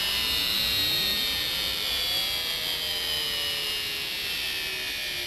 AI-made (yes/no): yes